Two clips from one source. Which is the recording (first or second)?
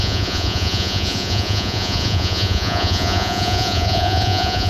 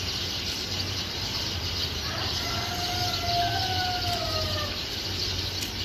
second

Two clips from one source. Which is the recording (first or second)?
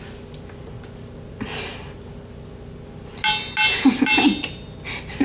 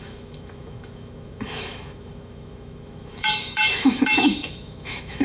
first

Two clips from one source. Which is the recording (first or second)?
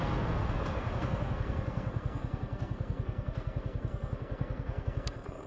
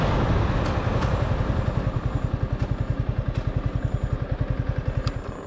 second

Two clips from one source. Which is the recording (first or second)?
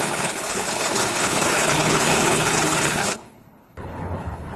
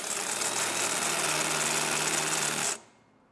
second